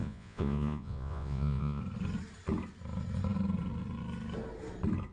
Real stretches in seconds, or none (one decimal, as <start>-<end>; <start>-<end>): 1.8-5.1